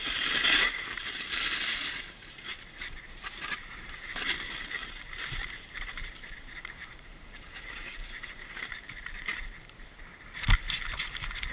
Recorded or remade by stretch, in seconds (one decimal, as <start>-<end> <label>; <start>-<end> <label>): 0.0-9.3 remade; 9.3-11.5 recorded